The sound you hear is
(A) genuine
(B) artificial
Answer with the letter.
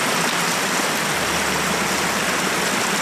A